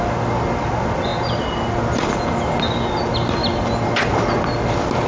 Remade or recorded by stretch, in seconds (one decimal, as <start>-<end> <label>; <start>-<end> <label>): 0.0-5.1 recorded